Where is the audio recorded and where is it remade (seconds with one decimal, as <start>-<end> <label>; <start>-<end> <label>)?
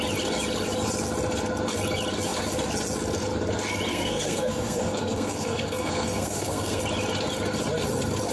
0.0-3.9 recorded; 3.9-6.8 remade; 6.8-8.3 recorded